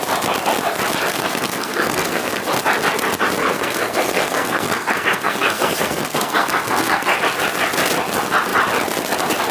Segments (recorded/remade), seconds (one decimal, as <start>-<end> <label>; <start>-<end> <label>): 0.0-1.1 recorded; 1.1-2.4 remade; 2.4-3.4 recorded; 3.4-7.2 remade; 7.2-9.5 recorded